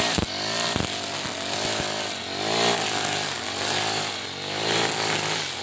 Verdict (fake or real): real